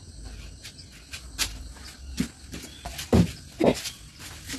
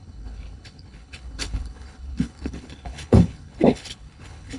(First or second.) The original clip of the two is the first